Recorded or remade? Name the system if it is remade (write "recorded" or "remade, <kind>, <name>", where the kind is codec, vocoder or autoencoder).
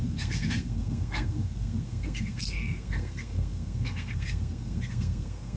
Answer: remade, codec, SNAC